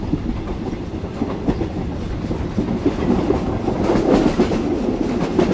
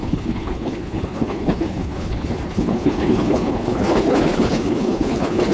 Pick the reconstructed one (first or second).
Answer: second